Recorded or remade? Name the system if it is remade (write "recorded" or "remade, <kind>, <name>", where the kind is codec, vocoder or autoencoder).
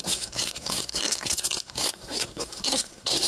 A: remade, codec, SNAC